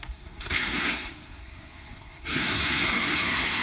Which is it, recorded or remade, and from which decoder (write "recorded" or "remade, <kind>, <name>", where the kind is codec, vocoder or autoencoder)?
remade, codec, SNAC